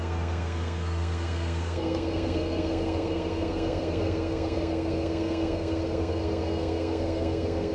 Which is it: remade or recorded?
remade